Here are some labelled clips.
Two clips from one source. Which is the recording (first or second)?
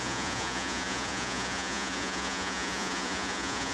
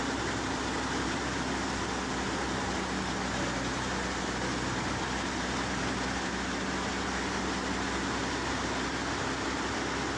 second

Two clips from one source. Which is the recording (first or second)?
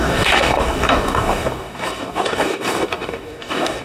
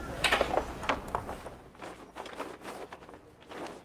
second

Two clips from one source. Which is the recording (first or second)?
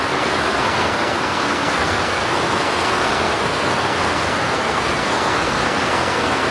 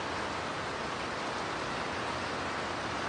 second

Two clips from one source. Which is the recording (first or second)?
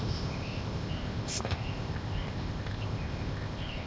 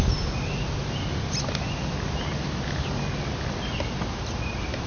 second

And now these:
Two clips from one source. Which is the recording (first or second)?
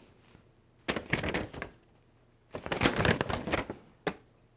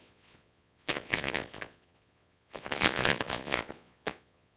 first